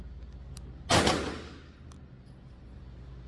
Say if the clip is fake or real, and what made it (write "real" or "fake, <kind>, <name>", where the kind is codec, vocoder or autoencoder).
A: real